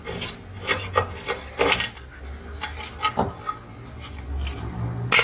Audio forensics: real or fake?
real